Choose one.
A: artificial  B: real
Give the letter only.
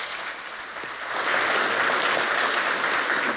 B